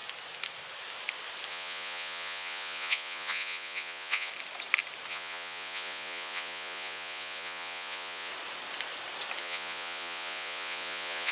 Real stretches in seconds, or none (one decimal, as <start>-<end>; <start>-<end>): 0.0-1.5; 4.3-5.1; 8.3-9.4